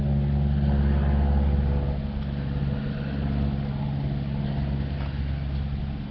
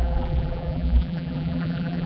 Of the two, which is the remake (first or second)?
second